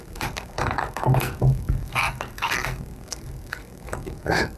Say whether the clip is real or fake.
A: fake